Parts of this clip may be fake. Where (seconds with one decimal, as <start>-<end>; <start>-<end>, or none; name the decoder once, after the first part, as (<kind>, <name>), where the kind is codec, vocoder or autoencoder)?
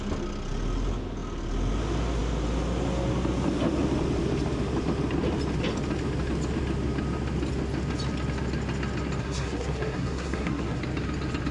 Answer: 9.2-10.8 (codec, SNAC)